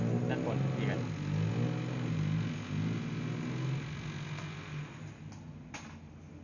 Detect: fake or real real